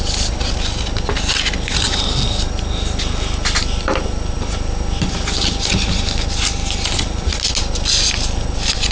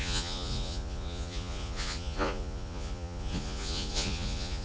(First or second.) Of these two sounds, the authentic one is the first